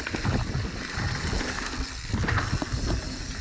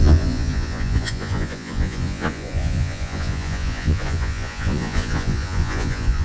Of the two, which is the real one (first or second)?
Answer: first